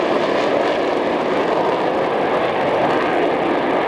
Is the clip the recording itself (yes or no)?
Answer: yes